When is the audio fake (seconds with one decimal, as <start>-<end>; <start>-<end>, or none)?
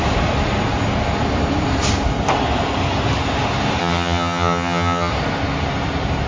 3.8-5.1